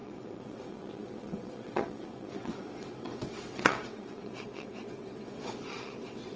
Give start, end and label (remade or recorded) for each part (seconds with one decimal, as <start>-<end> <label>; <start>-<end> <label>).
0.0-6.4 remade